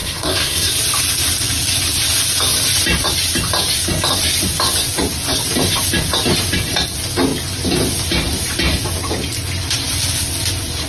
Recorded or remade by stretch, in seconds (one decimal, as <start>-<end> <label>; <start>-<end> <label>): 0.0-0.7 remade; 0.7-10.9 recorded